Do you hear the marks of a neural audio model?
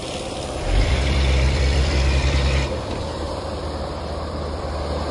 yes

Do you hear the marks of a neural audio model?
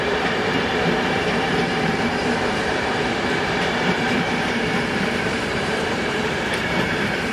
yes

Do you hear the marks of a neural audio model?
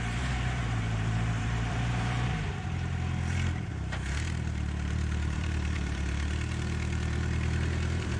yes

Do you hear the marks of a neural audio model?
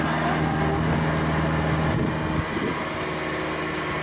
no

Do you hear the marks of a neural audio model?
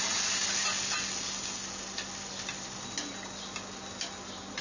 no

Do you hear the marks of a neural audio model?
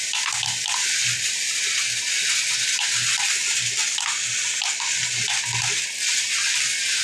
no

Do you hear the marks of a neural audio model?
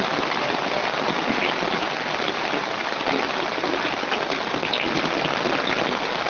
no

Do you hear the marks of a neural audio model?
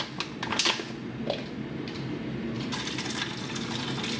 no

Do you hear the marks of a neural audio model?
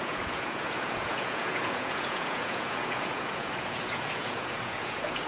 yes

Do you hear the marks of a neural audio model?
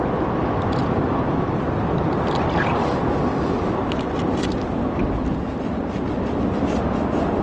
no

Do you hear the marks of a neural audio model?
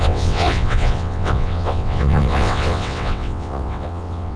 yes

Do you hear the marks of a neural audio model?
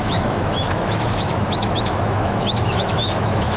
yes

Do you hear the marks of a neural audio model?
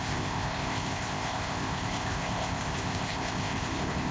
yes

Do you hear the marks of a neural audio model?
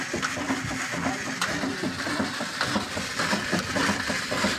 no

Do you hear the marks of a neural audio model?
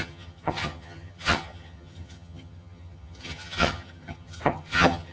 yes